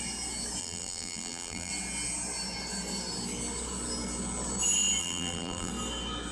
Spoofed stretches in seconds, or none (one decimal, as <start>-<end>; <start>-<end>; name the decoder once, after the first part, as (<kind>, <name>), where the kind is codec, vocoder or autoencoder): 0.6-1.7 (vocoder, BigVGAN v2); 5.0-5.7